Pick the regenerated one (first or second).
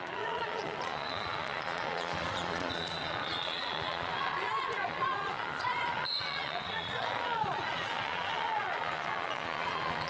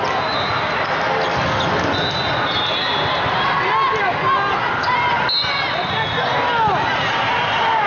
first